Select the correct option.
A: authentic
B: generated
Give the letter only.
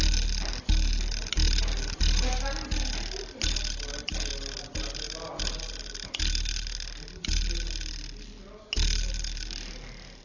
A